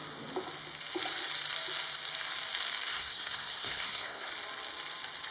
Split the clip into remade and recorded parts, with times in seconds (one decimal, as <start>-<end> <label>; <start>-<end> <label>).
0.0-2.9 recorded; 2.9-4.3 remade; 4.3-5.3 recorded